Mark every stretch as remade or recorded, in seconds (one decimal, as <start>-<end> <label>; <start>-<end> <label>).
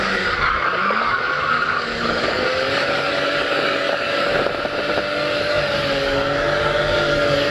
0.0-4.3 remade; 4.3-5.1 recorded; 5.1-7.5 remade